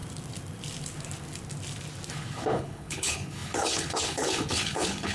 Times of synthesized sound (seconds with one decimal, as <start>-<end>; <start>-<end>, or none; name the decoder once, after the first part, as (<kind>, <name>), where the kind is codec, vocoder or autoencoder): 2.1-5.1 (codec, HILCodec)